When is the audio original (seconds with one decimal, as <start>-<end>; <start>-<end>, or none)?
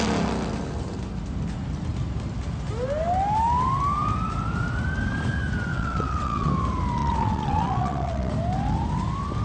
0.0-5.7; 6.5-7.0; 8.3-9.4